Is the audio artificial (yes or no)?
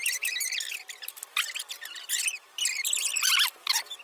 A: no